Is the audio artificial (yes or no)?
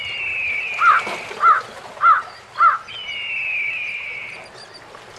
no